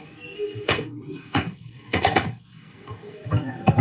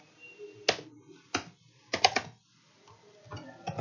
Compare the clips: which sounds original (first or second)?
second